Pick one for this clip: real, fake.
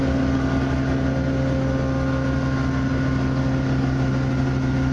real